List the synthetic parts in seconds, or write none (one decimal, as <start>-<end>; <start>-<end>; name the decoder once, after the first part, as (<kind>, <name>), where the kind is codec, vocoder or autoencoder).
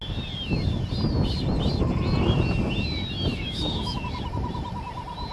3.3-4.0 (autoencoder, DAC-VAE)